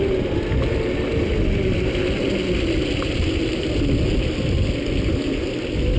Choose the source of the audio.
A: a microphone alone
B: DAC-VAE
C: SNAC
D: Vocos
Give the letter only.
A